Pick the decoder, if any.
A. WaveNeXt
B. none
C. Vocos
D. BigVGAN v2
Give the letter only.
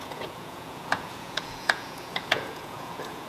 C